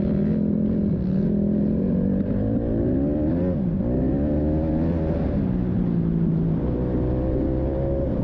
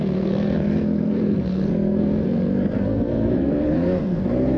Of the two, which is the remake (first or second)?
second